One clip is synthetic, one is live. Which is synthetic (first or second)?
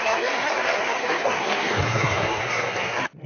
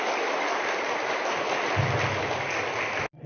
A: first